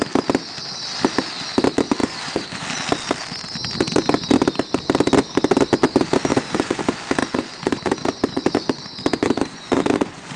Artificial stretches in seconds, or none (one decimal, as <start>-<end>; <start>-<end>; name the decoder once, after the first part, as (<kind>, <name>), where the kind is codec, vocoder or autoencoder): 2.0-2.6 (vocoder, Vocos); 6.3-6.8; 7.2-10.4